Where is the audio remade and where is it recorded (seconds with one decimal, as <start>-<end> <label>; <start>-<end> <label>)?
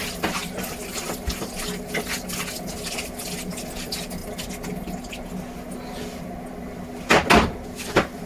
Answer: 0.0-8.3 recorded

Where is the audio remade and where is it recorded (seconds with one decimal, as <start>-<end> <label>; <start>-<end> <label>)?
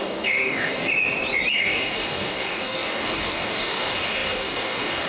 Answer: 0.0-0.9 remade; 0.9-1.5 recorded; 1.5-5.1 remade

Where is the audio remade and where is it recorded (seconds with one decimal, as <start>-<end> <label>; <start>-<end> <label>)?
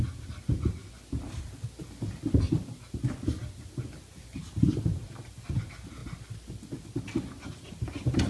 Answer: 0.0-8.3 recorded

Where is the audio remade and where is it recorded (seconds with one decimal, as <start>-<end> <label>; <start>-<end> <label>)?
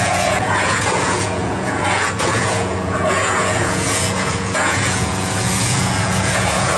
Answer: 0.0-6.8 remade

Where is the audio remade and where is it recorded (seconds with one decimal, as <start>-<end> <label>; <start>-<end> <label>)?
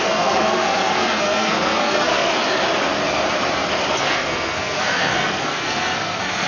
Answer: 0.0-2.4 remade; 2.4-4.0 recorded; 4.0-6.5 remade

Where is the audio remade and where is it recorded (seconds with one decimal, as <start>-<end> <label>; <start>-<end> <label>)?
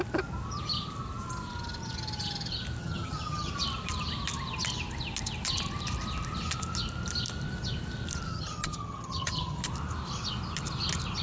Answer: 0.0-2.8 recorded; 2.8-3.5 remade; 3.5-8.3 recorded; 8.3-9.6 remade; 9.6-11.2 recorded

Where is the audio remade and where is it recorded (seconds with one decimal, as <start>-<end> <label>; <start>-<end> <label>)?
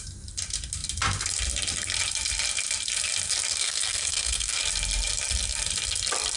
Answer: 0.0-3.6 recorded; 3.6-4.6 remade; 4.6-6.4 recorded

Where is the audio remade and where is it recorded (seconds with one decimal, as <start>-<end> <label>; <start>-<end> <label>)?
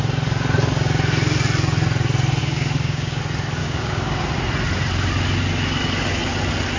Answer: 0.0-2.4 recorded; 2.4-3.2 remade; 3.2-3.6 recorded; 3.6-4.3 remade; 4.3-6.8 recorded